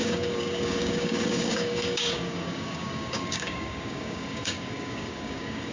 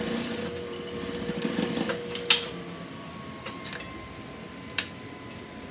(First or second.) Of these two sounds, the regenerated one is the first